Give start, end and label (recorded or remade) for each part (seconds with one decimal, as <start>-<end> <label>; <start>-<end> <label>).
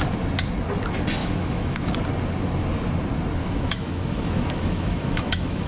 0.0-1.2 recorded; 1.2-2.0 remade; 2.0-3.4 recorded; 3.4-5.7 remade